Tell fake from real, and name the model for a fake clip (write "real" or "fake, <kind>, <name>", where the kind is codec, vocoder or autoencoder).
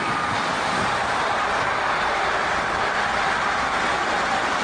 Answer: real